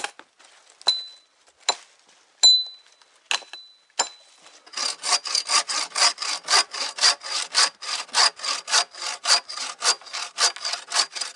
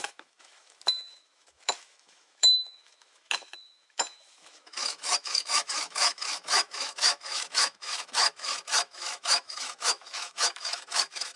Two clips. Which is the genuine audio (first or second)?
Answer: first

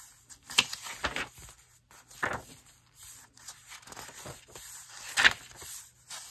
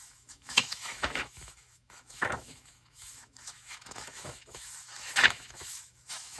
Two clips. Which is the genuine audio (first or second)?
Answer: first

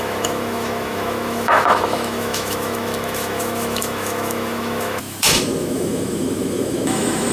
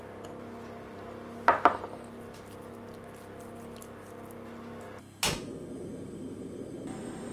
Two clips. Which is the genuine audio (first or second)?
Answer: second